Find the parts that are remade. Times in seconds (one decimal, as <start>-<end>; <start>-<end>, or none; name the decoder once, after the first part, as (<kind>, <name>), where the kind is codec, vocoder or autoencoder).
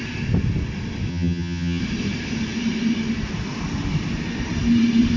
1.1-1.8 (vocoder, HiFi-GAN)